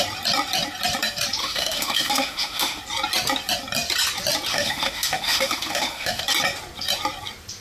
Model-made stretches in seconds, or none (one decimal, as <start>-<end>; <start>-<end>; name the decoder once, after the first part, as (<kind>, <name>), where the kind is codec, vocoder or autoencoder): 1.4-2.8 (autoencoder, DAC-VAE); 4.5-6.2